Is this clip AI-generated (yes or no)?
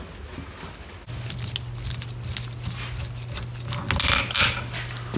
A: no